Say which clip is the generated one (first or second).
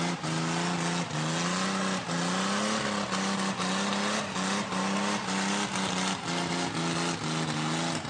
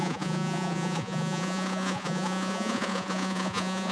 second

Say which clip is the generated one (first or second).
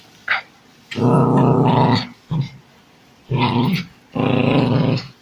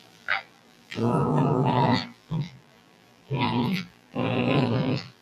second